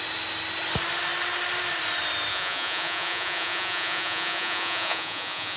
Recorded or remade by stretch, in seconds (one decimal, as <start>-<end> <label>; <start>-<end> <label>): 0.0-2.3 recorded; 2.3-5.6 remade